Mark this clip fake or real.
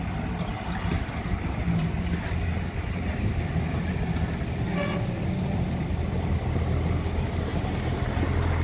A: real